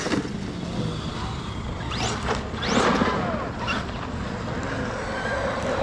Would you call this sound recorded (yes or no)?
yes